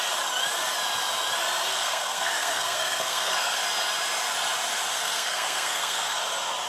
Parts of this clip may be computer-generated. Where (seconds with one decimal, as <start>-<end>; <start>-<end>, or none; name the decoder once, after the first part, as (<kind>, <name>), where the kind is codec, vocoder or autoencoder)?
1.7-3.6 (codec, SNAC); 4.9-6.2